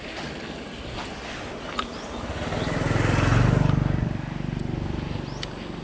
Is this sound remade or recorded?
recorded